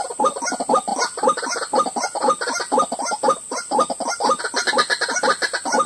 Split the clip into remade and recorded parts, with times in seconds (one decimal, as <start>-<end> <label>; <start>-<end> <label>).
0.0-5.9 recorded